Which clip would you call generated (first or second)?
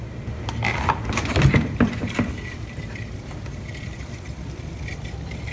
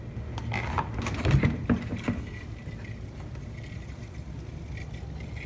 first